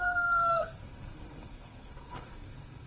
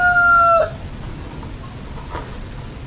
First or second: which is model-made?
first